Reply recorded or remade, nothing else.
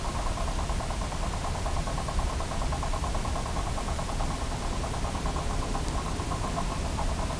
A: recorded